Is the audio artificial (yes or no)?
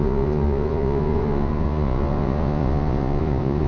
yes